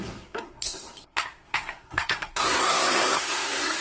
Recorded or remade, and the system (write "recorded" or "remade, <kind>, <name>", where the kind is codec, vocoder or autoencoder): remade, codec, SNAC